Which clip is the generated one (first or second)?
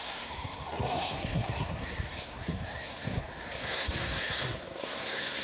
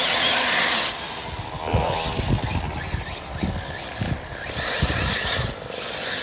first